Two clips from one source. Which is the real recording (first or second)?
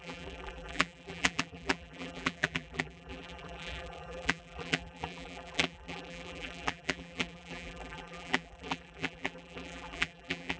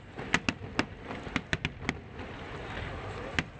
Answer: second